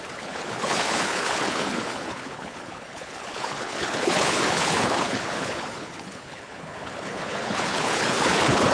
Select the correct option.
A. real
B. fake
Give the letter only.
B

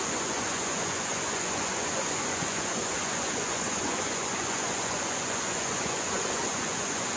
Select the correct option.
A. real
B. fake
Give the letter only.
B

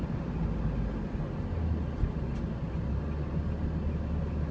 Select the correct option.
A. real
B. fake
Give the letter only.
A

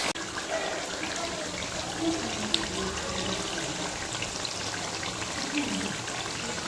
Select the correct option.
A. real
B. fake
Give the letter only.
A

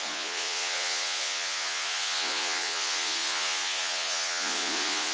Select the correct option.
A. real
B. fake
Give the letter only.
B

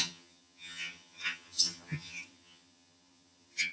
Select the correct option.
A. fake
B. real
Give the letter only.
A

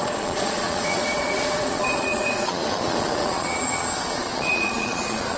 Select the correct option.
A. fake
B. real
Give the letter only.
A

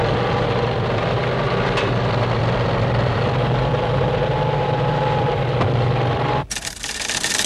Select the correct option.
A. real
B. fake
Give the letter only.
B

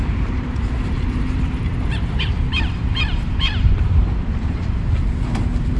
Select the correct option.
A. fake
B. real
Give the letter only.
A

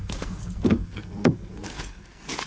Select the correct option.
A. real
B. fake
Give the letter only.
B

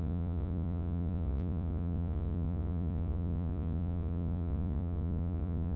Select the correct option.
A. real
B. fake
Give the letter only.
B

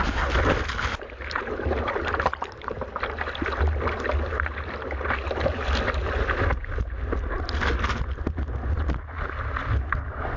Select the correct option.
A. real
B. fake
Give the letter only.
A